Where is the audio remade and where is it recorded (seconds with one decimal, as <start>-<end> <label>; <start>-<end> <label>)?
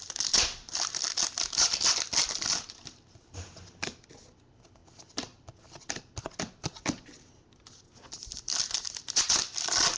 0.0-10.0 recorded